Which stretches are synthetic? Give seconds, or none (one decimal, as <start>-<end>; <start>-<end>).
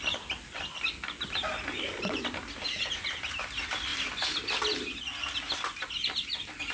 none